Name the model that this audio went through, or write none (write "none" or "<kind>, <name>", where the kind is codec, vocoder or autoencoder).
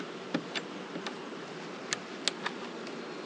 none